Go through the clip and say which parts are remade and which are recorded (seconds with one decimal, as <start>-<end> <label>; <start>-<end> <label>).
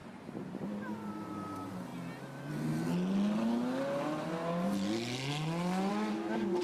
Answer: 0.0-6.6 recorded